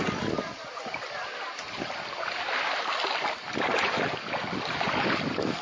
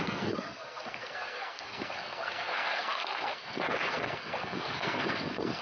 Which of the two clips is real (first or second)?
first